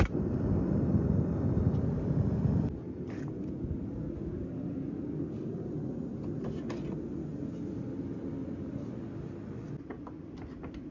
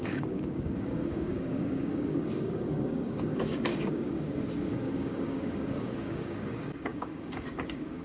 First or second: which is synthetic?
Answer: second